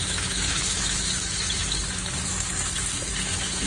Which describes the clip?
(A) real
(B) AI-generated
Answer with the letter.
B